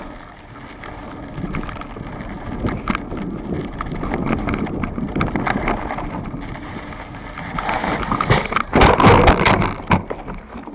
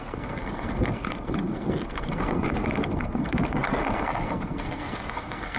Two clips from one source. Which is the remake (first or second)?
second